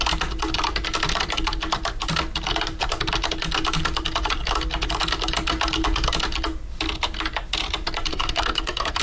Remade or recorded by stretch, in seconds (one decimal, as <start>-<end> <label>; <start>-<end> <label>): 0.0-8.1 recorded; 8.1-9.0 remade